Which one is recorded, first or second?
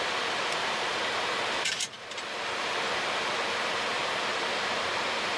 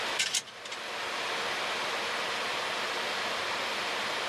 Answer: second